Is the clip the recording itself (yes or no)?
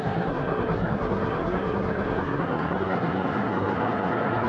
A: no